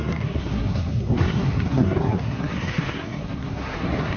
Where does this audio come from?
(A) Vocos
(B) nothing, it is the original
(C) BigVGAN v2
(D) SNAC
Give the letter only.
D